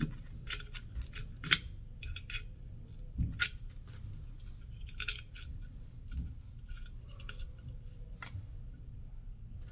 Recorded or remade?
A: recorded